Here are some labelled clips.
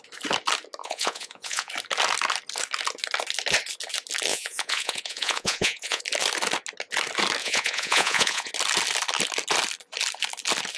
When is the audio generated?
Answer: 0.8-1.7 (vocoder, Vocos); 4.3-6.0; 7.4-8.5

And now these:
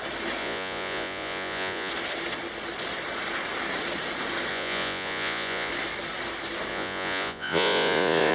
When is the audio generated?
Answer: 0.4-1.9 (vocoder, Vocos); 4.5-5.7; 6.7-8.3

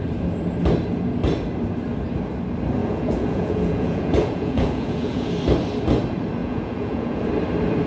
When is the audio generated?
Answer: 2.8-5.3 (vocoder, Vocos); 6.4-7.2